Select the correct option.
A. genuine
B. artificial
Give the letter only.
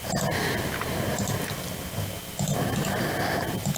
A